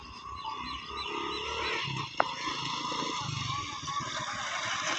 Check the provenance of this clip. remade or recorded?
recorded